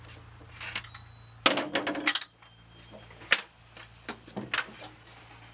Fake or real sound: real